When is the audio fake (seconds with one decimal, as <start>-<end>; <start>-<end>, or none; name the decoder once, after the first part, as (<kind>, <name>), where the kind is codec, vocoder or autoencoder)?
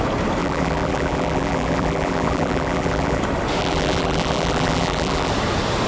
0.4-3.2 (vocoder, BigVGAN v2); 3.6-5.3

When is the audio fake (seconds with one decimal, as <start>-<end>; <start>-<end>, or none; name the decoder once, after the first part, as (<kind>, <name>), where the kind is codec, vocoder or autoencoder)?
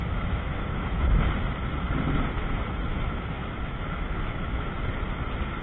0.0-1.2 (autoencoder, DAC-VAE); 2.9-4.8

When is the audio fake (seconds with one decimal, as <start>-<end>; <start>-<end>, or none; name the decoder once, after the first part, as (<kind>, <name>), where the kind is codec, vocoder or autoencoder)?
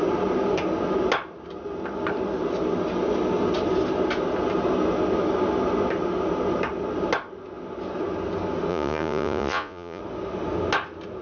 8.7-10.0 (vocoder, Vocos)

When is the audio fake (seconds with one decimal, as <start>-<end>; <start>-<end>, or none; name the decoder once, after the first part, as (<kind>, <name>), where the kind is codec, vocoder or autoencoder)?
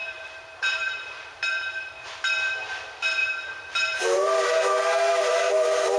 0.0-1.4 (vocoder, BigVGAN v2); 3.2-5.2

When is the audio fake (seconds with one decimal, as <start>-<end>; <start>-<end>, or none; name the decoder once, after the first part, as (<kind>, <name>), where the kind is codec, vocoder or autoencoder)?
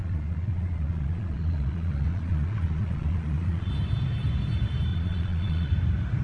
0.0-3.7 (vocoder, Vocos); 4.9-5.7